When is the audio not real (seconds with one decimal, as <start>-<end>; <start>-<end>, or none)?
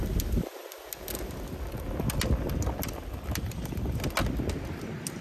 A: none